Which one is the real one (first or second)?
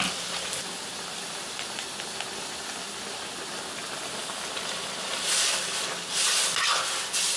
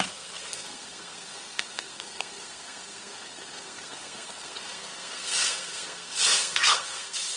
first